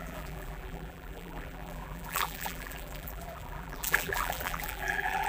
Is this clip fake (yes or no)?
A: yes